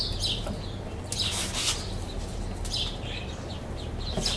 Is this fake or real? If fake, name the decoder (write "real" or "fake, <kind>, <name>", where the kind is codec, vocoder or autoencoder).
real